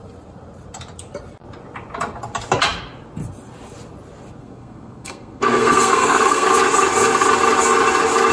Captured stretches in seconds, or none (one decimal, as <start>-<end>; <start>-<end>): 0.0-4.4; 6.5-8.3